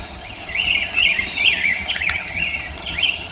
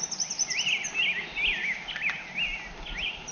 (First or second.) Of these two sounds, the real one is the second